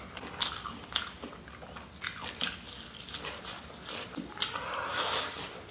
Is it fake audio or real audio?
real